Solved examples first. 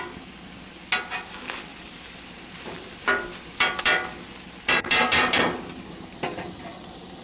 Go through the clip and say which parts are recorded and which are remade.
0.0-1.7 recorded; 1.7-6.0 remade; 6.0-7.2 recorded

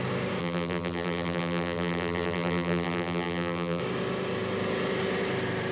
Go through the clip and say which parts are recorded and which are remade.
0.0-0.4 recorded; 0.4-3.8 remade; 3.8-5.7 recorded

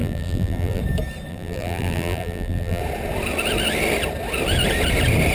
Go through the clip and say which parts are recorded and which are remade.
0.0-0.8 remade; 0.8-1.3 recorded; 1.3-2.8 remade; 2.8-5.3 recorded

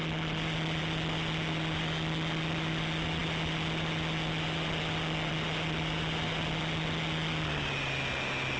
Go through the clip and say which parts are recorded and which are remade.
0.0-8.6 remade